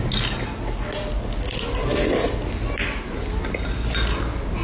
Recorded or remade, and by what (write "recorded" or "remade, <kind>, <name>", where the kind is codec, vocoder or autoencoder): recorded